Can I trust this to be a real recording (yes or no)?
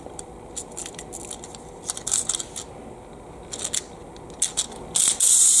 yes